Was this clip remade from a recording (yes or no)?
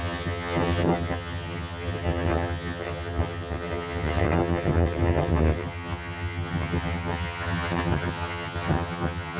yes